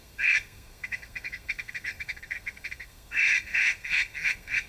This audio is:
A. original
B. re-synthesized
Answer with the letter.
B